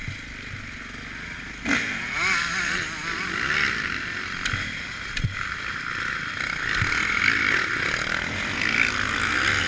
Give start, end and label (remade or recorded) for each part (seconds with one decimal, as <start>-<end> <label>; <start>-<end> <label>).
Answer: 0.0-9.7 recorded